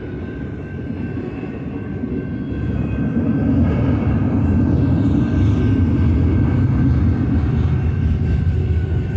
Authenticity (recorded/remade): recorded